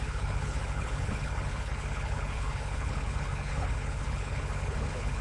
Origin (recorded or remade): remade